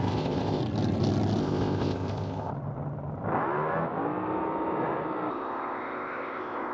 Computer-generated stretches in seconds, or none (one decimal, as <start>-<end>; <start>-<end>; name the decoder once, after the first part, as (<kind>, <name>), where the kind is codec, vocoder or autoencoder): 0.0-0.6 (codec, ZipCodec); 1.4-2.5; 5.3-6.7